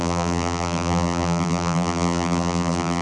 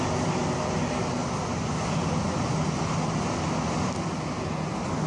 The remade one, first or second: first